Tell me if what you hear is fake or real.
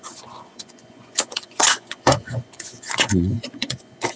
fake